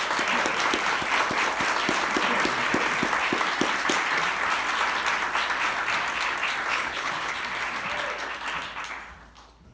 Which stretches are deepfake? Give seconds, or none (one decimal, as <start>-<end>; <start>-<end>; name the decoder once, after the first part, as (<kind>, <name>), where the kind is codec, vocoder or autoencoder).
6.7-7.3 (codec, HILCodec)